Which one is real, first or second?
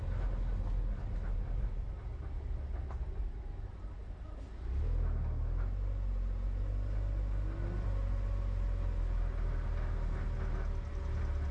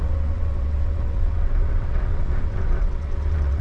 first